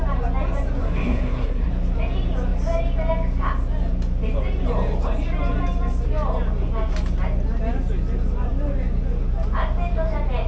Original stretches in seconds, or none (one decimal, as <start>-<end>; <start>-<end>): 0.0-0.8; 1.7-10.5